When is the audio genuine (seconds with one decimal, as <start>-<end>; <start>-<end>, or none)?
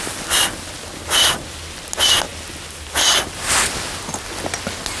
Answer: 0.0-5.0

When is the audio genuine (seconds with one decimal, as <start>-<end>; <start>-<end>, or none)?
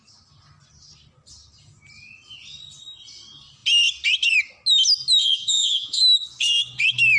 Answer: 0.0-5.2; 6.0-7.2